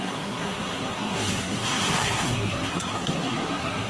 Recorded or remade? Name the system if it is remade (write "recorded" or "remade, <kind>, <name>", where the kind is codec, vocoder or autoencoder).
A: remade, codec, SNAC